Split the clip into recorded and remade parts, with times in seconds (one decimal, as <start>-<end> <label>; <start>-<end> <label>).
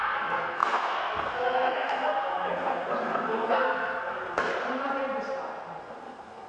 0.0-4.5 remade; 4.5-5.8 recorded; 5.8-6.5 remade